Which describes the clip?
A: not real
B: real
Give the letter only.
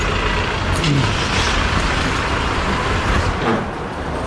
B